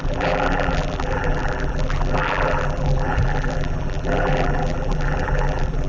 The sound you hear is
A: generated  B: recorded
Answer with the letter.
A